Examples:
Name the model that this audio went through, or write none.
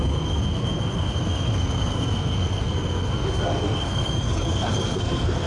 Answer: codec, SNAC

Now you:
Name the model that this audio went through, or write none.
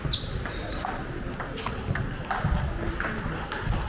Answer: none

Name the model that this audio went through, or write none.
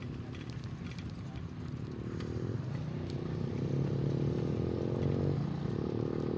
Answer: none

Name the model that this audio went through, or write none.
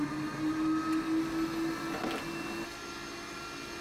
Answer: none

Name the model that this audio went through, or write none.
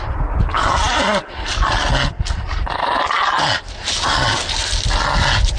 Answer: none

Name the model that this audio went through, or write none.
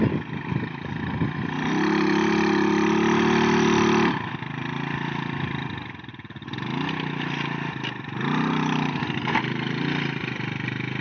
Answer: none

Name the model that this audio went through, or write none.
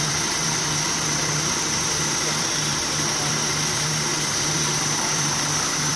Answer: vocoder, BigVGAN v2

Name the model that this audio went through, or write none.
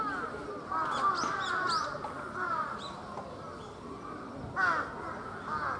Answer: none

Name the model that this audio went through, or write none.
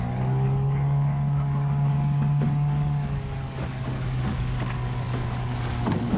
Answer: codec, DAC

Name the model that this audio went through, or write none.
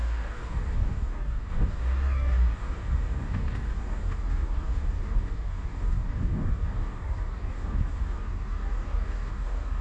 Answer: codec, DAC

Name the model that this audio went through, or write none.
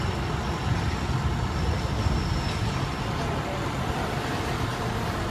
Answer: none